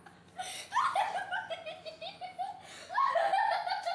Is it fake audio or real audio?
real